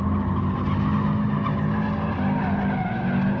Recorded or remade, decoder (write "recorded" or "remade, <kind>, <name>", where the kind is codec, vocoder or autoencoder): recorded